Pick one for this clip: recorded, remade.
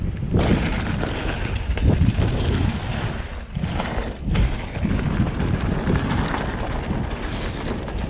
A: recorded